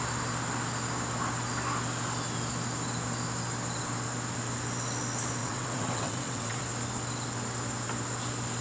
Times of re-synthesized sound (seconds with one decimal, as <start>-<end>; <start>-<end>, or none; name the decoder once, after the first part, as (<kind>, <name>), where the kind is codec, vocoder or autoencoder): 5.4-6.6 (vocoder, WaveNeXt)